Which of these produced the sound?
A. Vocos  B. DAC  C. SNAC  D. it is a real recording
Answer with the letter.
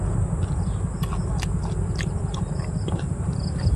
D